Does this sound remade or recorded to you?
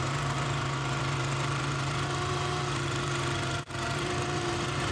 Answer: remade